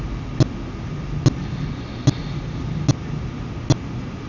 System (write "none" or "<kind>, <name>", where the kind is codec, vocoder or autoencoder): none